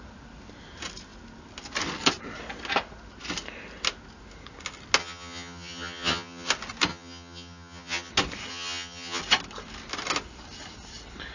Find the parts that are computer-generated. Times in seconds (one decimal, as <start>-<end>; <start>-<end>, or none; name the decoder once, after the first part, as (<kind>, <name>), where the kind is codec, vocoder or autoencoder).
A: 5.0-6.5 (vocoder, HiFi-GAN); 6.9-8.1; 8.5-9.2